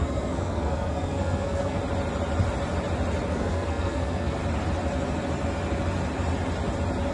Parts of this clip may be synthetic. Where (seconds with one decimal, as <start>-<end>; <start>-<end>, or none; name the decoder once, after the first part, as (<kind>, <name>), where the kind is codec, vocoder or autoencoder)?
0.0-1.8 (codec, SNAC); 3.3-4.4